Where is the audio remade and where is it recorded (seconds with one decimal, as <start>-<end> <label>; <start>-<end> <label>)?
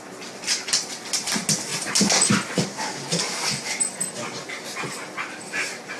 0.0-6.0 recorded